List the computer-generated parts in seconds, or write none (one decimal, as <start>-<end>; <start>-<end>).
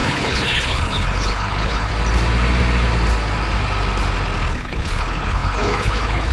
0.0-1.9; 4.5-6.3